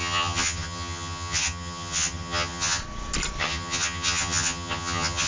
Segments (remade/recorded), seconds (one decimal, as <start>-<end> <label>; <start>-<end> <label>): 0.0-2.8 remade; 2.8-3.4 recorded; 3.4-5.3 remade

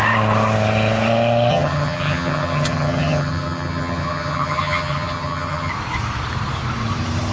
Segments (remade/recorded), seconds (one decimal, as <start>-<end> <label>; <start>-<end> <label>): 0.0-1.5 recorded; 1.5-5.7 remade; 5.7-7.3 recorded